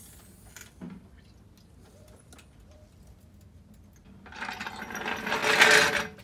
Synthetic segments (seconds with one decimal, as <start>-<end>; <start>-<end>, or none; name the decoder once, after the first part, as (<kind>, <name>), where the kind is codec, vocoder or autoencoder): none